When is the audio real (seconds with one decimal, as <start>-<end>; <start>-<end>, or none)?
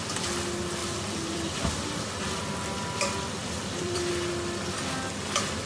0.0-0.8; 2.4-3.4; 4.1-5.7